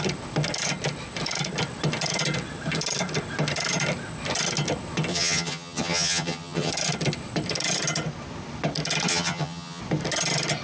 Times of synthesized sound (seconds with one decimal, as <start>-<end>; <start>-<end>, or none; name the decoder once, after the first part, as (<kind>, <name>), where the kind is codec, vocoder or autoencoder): 5.1-6.7 (vocoder, HiFi-GAN); 9.1-9.8